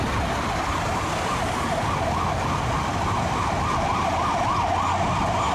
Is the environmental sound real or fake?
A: real